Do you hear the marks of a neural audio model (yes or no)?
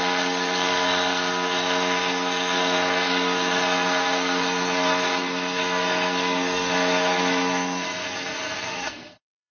yes